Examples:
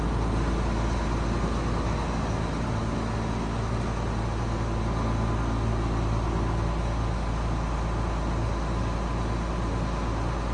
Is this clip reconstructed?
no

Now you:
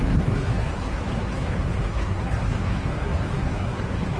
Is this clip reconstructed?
yes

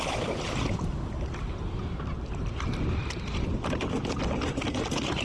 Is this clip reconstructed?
no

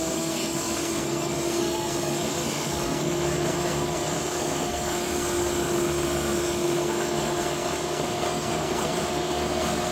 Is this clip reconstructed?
yes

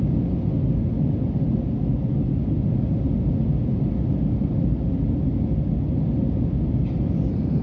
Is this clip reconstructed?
no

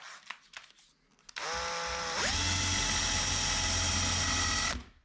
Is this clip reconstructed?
no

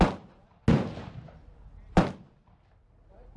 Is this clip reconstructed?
no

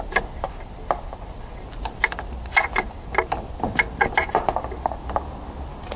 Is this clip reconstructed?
no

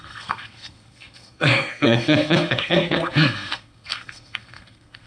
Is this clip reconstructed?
yes